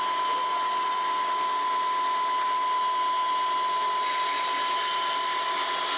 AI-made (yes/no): no